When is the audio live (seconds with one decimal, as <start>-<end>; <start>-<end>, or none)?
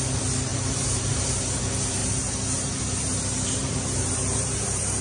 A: 0.0-0.5; 1.6-2.0